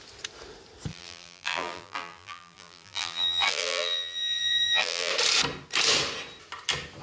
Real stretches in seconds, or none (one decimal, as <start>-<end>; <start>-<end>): 0.0-0.9; 5.1-7.0